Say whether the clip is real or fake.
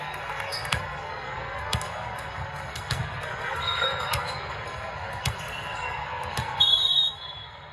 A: fake